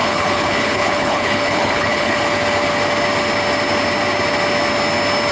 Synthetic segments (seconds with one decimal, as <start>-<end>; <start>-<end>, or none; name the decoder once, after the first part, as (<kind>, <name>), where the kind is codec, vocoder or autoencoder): 0.0-2.2 (codec, HILCodec)